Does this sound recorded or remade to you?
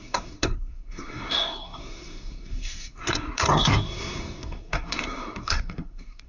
remade